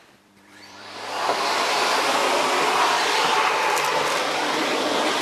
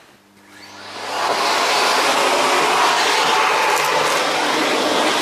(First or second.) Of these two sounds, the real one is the second